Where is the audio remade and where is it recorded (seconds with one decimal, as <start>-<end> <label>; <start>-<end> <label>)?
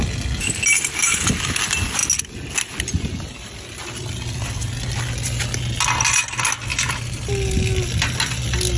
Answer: 0.0-6.7 recorded; 6.7-7.3 remade; 7.3-8.8 recorded